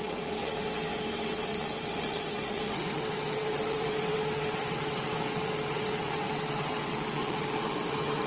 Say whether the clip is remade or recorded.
remade